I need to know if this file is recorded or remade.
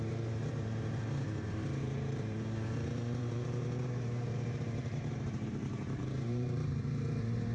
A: remade